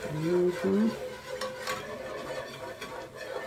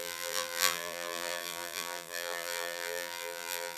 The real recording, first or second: first